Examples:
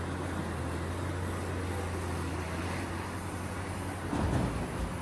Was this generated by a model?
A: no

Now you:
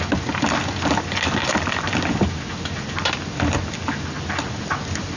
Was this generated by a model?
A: no